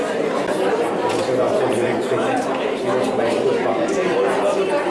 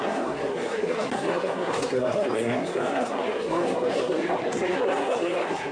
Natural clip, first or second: first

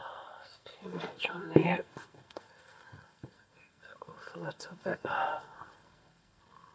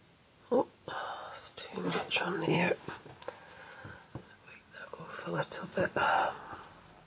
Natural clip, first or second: second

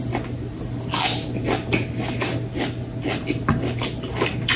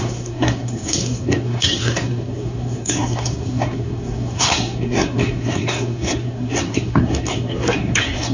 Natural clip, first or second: first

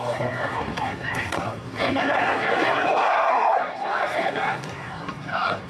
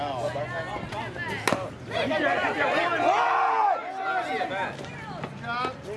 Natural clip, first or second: second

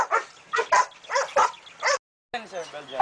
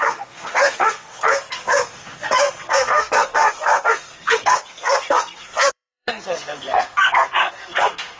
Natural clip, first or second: first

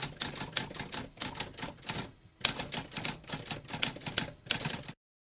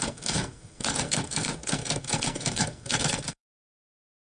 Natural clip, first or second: first